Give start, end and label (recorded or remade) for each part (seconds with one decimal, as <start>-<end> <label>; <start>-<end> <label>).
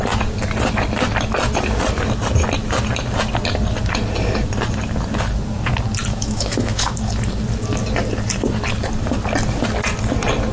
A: 0.0-6.1 recorded; 6.1-6.9 remade; 6.9-10.5 recorded